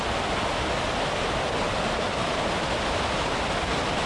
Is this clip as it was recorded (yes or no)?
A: yes